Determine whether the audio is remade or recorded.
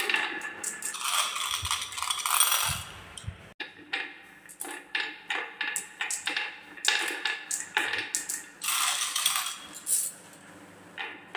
recorded